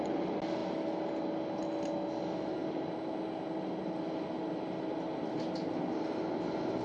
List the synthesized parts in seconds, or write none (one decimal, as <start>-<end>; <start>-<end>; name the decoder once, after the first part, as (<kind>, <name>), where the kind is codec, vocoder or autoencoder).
none